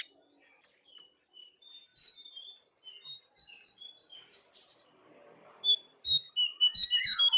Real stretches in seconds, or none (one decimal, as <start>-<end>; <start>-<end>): 0.0-1.9; 6.3-7.4